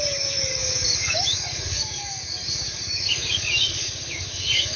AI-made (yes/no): yes